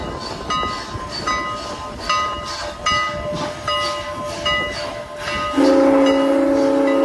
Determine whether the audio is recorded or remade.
recorded